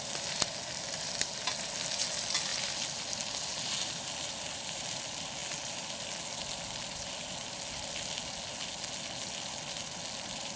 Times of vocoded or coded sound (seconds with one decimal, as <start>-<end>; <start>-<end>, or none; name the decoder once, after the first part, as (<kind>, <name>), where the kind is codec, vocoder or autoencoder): none